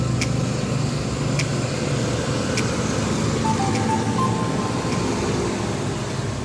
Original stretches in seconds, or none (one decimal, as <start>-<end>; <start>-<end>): 0.0-6.4